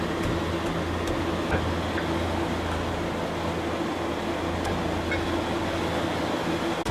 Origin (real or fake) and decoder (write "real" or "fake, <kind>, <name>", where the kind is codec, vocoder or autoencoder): real